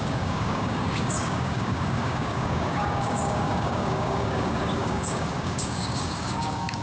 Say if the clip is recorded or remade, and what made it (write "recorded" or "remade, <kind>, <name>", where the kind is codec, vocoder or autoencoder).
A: remade, codec, DAC